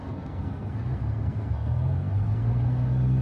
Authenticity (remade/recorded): remade